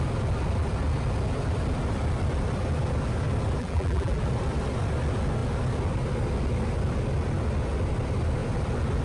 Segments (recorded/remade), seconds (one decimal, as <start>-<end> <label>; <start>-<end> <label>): 0.0-3.6 recorded; 3.6-4.2 remade; 4.2-9.0 recorded